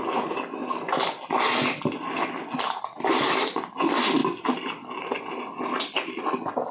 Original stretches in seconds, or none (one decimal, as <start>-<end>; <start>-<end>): 0.0-6.7